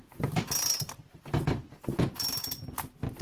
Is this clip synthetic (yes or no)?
no